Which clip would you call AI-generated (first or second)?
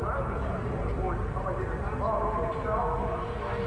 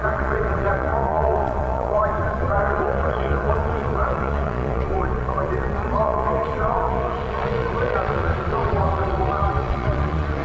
second